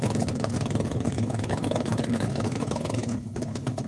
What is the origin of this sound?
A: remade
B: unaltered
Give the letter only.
A